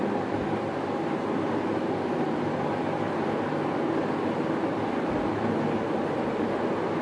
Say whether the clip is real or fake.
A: real